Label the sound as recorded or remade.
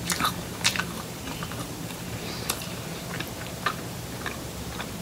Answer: remade